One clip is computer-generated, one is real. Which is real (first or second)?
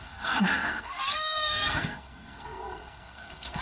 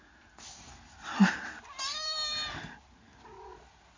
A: second